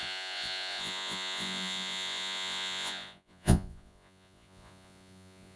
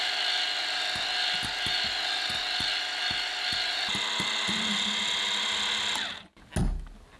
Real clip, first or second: second